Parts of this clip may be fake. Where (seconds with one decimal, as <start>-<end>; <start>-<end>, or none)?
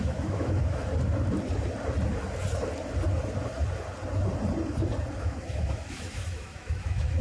0.0-0.9; 5.2-7.2